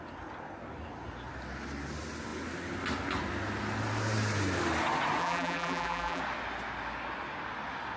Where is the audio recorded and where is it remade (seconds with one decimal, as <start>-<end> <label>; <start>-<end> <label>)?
0.0-5.2 recorded; 5.2-6.2 remade; 6.2-8.0 recorded